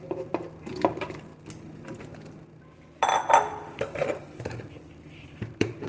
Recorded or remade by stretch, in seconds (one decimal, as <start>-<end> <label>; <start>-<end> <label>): 0.0-1.3 remade; 1.3-2.0 recorded; 2.0-2.4 remade; 2.4-3.5 recorded; 3.5-5.9 remade